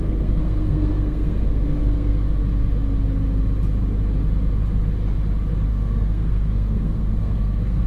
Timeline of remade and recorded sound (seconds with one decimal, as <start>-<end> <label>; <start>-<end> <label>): 0.0-2.4 remade; 2.4-5.7 recorded; 5.7-7.9 remade